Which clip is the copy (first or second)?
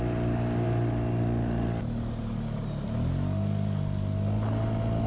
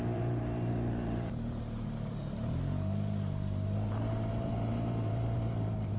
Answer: second